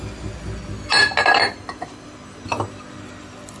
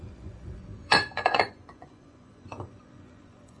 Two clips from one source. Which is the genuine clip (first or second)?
first